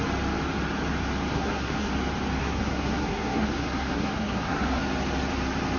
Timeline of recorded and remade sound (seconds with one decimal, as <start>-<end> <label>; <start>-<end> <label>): 0.0-1.3 recorded; 1.3-1.9 remade; 1.9-2.4 recorded; 2.4-4.8 remade; 4.8-5.8 recorded